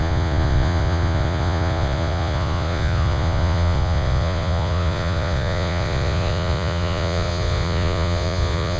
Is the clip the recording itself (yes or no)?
no